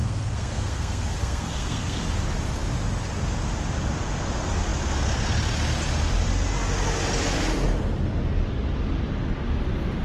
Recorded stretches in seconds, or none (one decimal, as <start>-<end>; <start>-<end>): 2.0-10.0